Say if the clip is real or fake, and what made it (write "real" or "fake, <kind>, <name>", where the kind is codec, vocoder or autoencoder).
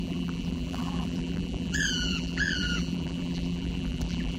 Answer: fake, vocoder, BigVGAN v2